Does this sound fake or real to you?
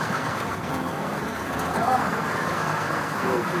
fake